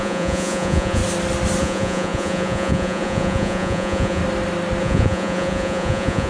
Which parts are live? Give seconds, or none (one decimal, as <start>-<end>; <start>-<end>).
1.0-1.6; 4.2-4.8